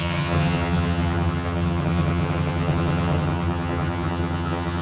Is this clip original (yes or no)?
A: no